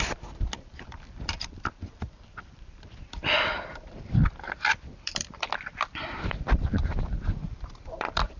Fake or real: fake